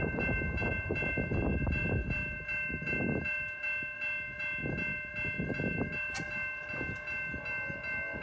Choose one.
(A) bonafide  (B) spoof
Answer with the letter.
A